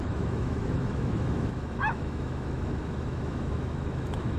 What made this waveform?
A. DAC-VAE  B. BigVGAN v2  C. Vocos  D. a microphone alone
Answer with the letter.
A